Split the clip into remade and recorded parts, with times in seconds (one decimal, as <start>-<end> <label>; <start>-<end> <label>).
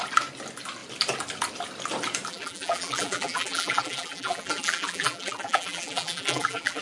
0.0-2.3 recorded; 2.3-6.8 remade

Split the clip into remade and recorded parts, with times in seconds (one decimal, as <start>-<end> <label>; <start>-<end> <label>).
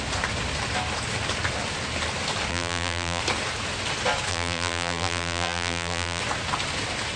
0.0-2.5 recorded; 2.5-3.2 remade; 3.2-4.3 recorded; 4.3-6.2 remade; 6.2-7.2 recorded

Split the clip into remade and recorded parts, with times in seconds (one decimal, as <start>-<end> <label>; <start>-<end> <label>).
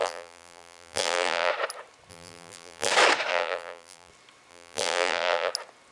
0.0-1.5 remade; 1.5-2.1 recorded; 2.1-2.9 remade; 2.9-3.3 recorded; 3.3-4.1 remade; 4.1-4.5 recorded; 4.5-5.5 remade; 5.5-5.9 recorded